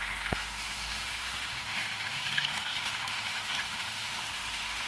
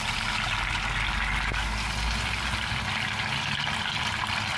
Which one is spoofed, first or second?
first